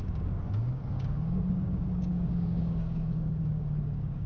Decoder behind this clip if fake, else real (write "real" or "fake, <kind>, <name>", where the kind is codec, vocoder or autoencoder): fake, codec, DAC